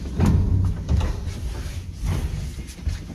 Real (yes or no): yes